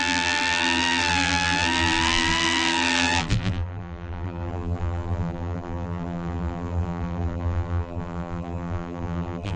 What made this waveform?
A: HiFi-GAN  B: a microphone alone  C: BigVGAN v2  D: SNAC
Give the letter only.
C